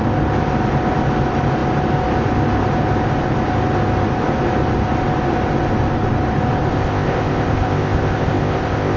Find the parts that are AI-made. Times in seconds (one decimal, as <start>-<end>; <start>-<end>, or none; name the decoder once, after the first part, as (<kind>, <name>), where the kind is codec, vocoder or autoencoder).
6.7-9.0 (codec, ZipCodec)